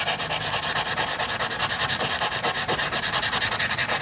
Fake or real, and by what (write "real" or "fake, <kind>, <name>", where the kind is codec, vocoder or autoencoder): real